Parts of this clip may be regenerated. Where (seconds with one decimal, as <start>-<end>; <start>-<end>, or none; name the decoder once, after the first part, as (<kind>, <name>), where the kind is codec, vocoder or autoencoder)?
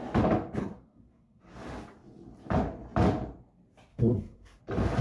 0.6-1.4 (codec, SNAC); 3.9-4.6